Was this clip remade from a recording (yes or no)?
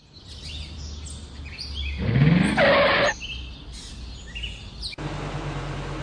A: no